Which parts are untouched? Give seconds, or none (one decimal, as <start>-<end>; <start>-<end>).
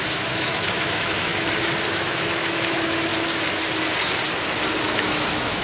1.3-1.9; 3.1-4.8